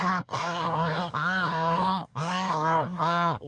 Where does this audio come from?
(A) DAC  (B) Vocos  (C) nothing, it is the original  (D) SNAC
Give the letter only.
D